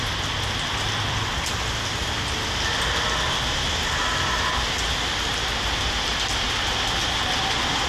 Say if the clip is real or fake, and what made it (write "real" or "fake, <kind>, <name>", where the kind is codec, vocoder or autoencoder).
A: real